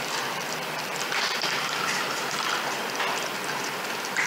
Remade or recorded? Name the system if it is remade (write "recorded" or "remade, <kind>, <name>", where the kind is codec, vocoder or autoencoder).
remade, vocoder, BigVGAN v2